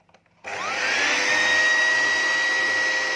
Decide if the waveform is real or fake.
real